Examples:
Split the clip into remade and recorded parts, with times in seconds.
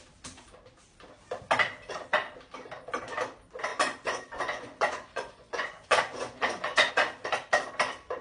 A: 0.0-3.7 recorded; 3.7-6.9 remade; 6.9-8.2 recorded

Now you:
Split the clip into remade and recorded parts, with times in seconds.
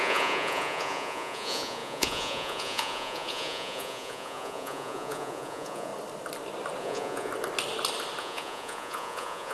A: 0.0-5.9 remade; 5.9-6.8 recorded; 6.8-7.3 remade; 7.3-8.2 recorded; 8.2-9.5 remade